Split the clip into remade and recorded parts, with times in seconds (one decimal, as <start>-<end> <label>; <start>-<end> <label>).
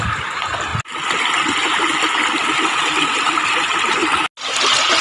0.0-5.0 recorded